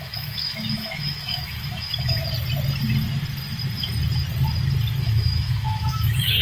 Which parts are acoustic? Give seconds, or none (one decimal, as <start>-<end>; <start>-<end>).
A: 2.2-5.0